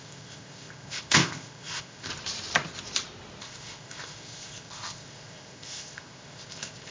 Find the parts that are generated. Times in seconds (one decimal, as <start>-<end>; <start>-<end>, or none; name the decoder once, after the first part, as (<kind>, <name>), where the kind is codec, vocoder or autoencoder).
0.0-2.1 (codec, ZipCodec); 3.4-6.9